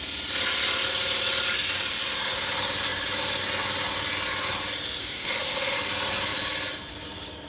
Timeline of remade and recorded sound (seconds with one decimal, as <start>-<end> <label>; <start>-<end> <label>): 0.0-5.0 recorded; 5.0-5.8 remade; 5.8-7.5 recorded